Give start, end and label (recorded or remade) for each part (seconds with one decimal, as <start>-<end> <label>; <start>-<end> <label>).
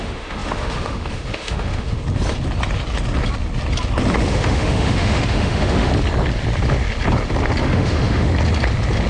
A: 0.0-2.0 remade; 2.0-4.3 recorded; 4.3-5.9 remade; 5.9-7.6 recorded; 7.6-8.3 remade; 8.3-9.1 recorded